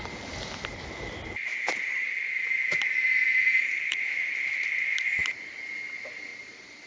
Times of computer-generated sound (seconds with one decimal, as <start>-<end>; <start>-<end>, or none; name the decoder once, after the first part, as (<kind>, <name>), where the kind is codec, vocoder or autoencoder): 2.7-4.3 (vocoder, BigVGAN v2); 6.3-6.9